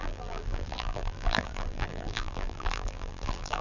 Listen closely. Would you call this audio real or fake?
fake